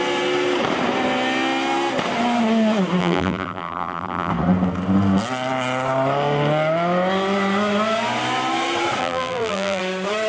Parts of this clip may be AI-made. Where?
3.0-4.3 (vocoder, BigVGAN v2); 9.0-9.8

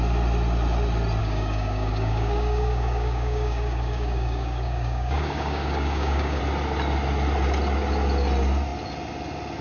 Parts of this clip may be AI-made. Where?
1.2-6.4 (codec, DAC)

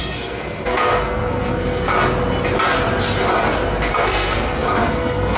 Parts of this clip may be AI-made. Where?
0.0-1.9 (codec, SNAC); 3.9-5.4

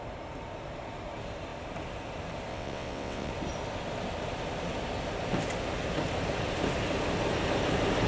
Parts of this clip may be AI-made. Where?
2.5-3.3 (vocoder, WaveNeXt)

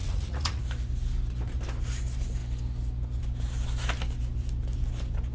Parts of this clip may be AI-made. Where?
0.0-0.6 (vocoder, Vocos)

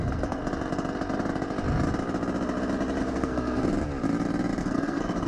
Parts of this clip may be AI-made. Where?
0.0-0.4 (codec, SNAC); 3.0-3.7; 4.6-5.3

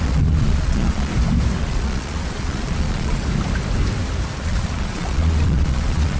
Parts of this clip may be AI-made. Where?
0.0-1.1 (vocoder, Vocos); 1.6-3.2; 4.4-6.2

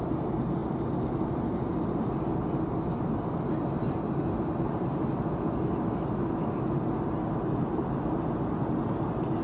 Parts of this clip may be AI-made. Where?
none